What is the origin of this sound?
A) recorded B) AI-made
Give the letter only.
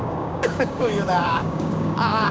B